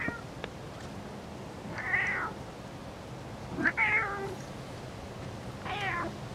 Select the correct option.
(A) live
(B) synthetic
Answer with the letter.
A